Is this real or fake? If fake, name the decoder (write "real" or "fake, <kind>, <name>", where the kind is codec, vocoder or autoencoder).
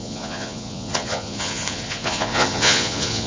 fake, vocoder, Vocos